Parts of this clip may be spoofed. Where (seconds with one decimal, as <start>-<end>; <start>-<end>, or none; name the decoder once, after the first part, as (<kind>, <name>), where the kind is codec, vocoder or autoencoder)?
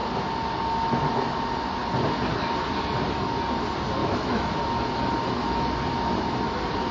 4.0-4.6 (autoencoder, DAC-VAE)